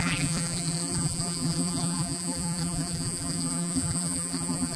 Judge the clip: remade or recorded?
remade